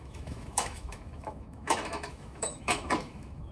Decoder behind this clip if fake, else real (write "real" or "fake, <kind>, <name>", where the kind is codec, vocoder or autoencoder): fake, autoencoder, DAC-VAE